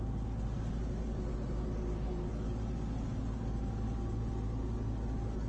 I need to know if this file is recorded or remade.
recorded